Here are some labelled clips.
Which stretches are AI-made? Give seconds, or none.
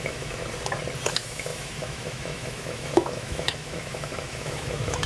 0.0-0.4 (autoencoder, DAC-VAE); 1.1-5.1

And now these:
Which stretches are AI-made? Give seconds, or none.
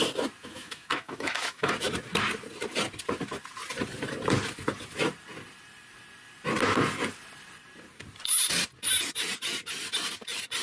0.4-1.7 (autoencoder, DAC-VAE)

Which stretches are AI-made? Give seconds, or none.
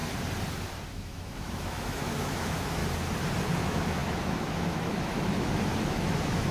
0.9-2.8 (autoencoder, DAC-VAE); 3.6-6.5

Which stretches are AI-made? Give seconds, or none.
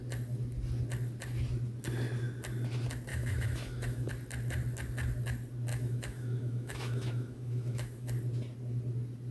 3.1-4.1 (autoencoder, DAC-VAE); 5.7-8.1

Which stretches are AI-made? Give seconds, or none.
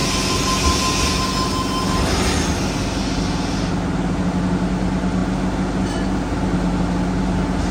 none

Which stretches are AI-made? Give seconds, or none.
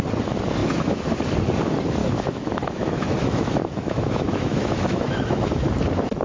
0.6-1.2 (autoencoder, DAC-VAE); 2.0-5.7